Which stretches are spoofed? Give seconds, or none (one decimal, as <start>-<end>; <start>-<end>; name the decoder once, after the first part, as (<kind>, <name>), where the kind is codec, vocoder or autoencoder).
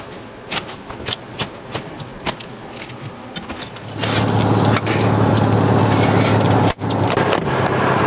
none